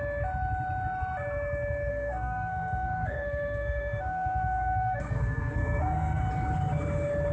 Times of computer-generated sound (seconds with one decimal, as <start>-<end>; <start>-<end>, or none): 1.9-6.2